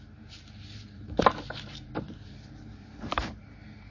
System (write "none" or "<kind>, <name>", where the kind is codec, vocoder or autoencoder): vocoder, BigVGAN v2